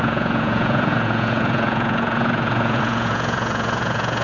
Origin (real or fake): fake